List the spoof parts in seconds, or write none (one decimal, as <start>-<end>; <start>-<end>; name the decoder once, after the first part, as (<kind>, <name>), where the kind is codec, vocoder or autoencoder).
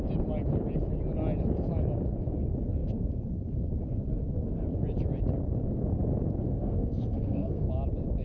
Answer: 6.5-7.7 (codec, SNAC)